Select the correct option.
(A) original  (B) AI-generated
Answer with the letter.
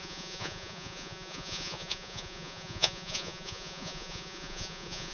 B